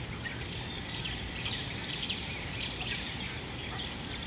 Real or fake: real